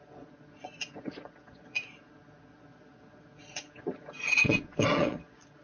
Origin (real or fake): fake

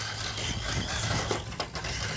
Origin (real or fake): real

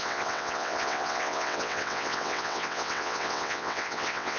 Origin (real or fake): fake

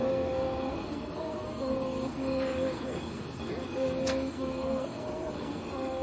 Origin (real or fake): fake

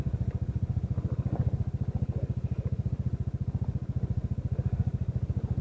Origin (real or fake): real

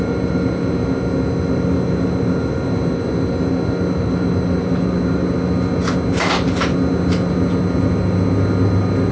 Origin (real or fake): real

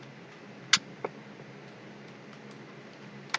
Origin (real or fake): real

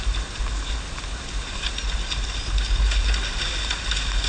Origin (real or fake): real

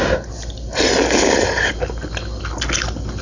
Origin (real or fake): real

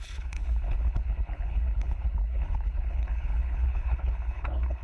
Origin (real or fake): fake